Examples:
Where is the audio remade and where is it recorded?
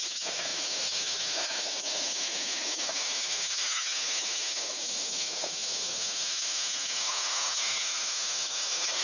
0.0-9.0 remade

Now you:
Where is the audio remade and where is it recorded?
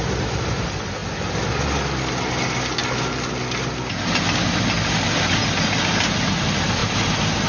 0.0-7.5 recorded